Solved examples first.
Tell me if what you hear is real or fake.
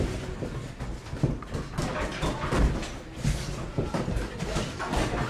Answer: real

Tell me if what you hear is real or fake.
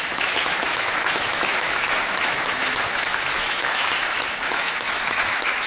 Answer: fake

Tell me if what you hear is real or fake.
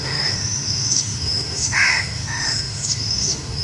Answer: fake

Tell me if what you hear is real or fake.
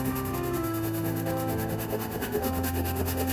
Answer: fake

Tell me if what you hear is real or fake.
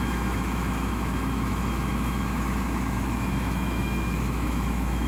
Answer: fake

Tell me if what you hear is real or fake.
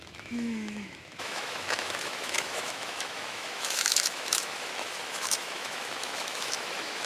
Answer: fake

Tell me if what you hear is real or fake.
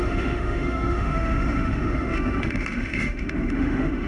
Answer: fake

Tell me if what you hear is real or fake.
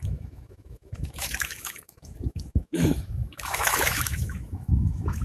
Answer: fake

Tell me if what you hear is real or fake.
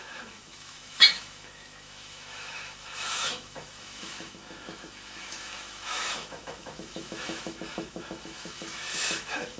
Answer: fake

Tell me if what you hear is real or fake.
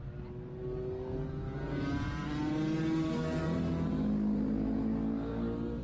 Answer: real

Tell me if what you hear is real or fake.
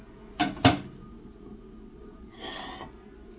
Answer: real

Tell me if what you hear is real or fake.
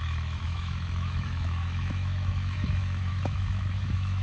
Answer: fake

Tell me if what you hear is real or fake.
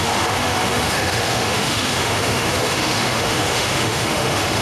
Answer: fake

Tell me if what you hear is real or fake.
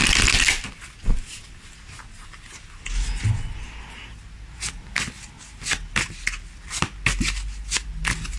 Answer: real